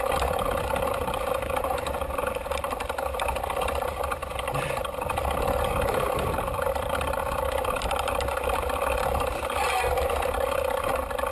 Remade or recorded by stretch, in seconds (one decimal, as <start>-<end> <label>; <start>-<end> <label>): 0.0-11.3 recorded